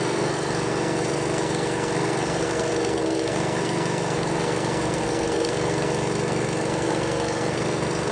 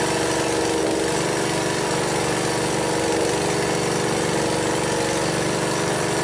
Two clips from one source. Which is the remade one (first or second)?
first